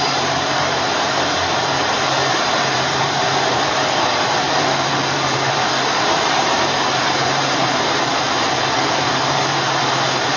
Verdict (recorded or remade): remade